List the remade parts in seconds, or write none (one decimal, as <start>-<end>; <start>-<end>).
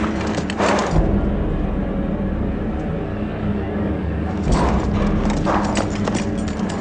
3.1-4.7